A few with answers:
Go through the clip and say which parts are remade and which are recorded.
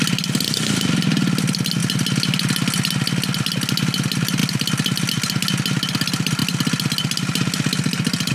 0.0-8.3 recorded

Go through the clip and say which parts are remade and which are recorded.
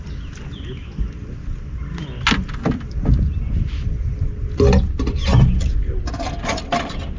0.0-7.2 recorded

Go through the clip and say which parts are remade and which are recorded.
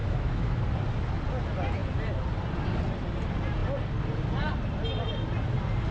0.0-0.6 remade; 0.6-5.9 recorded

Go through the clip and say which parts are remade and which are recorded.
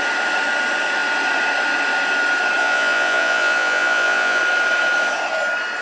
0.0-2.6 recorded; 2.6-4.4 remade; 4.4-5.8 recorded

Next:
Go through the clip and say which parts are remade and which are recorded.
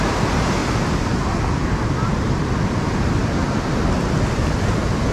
0.0-5.1 recorded